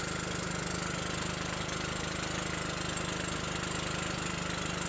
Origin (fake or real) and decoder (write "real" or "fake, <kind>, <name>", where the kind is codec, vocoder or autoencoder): real